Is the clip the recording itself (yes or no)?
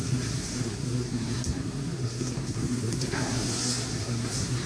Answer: no